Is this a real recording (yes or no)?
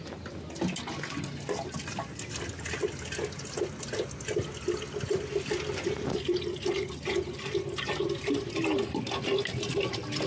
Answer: yes